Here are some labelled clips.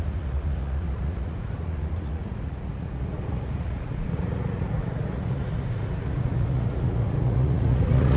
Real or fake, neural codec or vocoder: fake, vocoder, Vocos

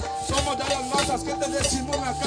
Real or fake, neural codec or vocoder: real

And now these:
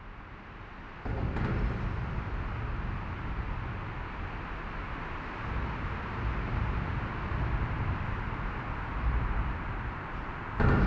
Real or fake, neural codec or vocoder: real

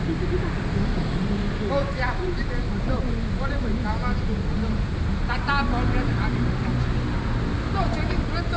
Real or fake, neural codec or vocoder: real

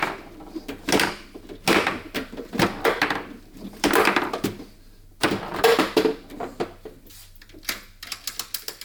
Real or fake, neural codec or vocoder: real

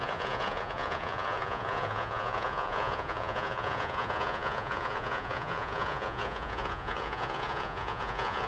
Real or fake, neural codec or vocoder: fake, vocoder, Vocos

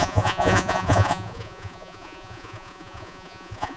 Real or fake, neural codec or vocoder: fake, vocoder, Vocos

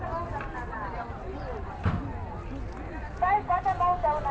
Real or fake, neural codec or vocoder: real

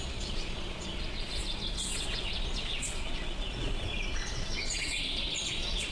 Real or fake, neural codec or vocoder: fake, vocoder, Vocos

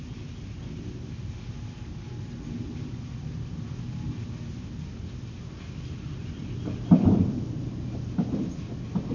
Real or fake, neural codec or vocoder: real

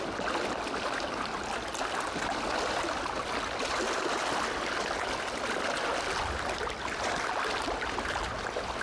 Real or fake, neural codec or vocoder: real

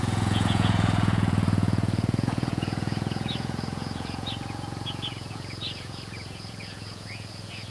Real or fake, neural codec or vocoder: fake, vocoder, Vocos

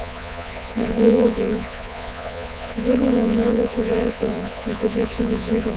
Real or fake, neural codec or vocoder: fake, vocoder, Vocos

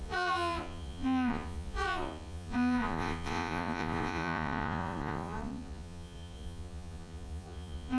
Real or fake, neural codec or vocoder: fake, vocoder, Vocos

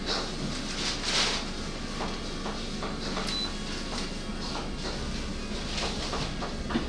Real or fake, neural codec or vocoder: real